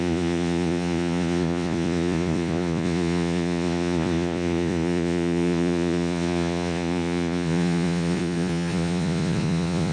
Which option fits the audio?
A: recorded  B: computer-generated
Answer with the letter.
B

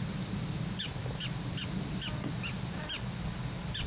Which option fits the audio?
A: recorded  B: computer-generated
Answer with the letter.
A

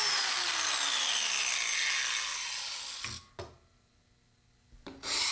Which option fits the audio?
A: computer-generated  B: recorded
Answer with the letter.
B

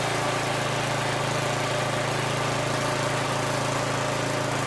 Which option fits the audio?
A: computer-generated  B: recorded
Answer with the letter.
B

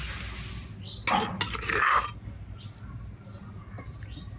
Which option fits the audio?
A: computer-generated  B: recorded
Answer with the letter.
B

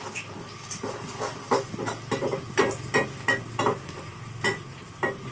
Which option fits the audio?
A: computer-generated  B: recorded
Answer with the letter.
B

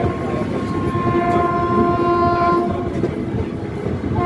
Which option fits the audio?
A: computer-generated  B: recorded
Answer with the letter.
B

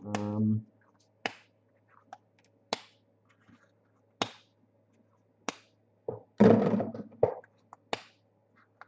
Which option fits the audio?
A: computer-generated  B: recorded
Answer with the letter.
B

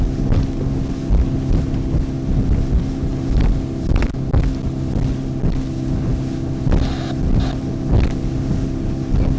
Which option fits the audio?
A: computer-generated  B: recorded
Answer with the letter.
B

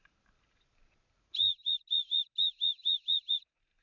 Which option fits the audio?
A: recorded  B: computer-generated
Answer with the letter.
A